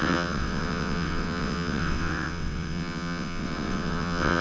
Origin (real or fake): fake